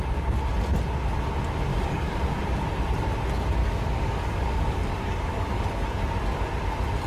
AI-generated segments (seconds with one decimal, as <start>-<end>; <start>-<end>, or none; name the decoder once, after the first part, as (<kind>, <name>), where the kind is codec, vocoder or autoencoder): 1.7-2.4 (codec, DAC); 3.6-6.0